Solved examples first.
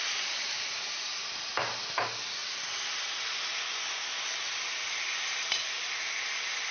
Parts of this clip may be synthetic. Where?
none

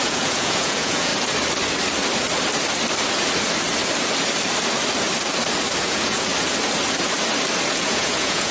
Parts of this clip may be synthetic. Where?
0.0-1.1 (vocoder, Vocos); 5.8-6.3; 7.7-8.5

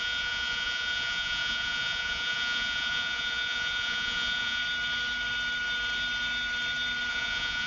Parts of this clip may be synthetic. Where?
0.0-4.6 (vocoder, Vocos); 7.1-7.7

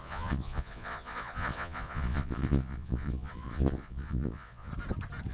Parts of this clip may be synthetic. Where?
0.0-4.7 (vocoder, Vocos)

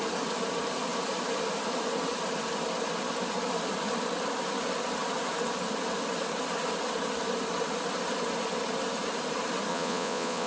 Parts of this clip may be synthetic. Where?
9.7-10.5 (vocoder, Vocos)

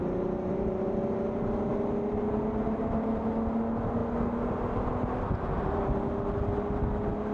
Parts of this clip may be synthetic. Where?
none

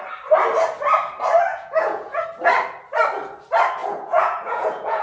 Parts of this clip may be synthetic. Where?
1.5-2.2 (vocoder, Vocos); 3.8-5.0

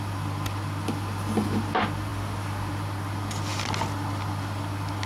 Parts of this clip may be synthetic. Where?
none